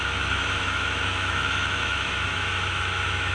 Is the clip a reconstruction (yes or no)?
yes